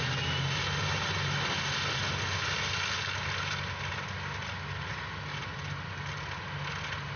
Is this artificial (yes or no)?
no